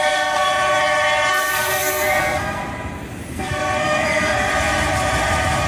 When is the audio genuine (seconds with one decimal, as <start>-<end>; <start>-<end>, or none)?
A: 0.5-1.3; 2.6-3.3; 4.5-5.7